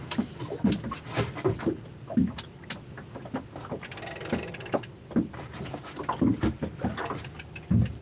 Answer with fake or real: real